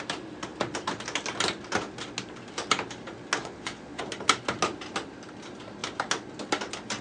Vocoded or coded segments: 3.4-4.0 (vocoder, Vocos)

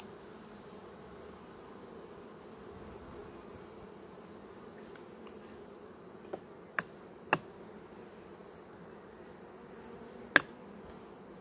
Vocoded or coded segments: none